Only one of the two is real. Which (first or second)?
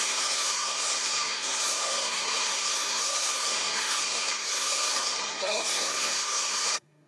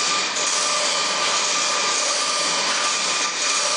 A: second